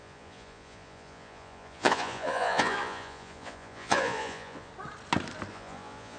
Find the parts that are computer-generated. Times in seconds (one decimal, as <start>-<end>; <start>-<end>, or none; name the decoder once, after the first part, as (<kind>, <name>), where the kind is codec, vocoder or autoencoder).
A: 0.0-4.7 (vocoder, Vocos); 5.5-6.2